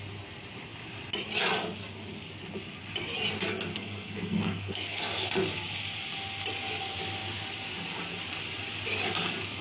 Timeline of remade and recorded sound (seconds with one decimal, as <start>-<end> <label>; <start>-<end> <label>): 0.0-3.7 recorded; 3.7-5.0 remade; 5.0-9.6 recorded